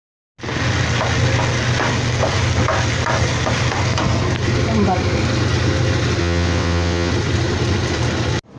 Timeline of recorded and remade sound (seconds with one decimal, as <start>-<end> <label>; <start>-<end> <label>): 0.0-6.2 recorded; 6.2-7.1 remade; 7.1-8.6 recorded